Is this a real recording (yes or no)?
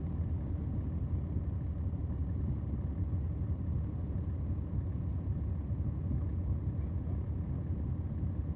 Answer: yes